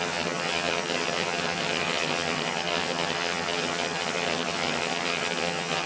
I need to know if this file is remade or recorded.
remade